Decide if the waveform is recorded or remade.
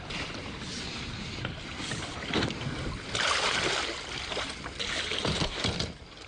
recorded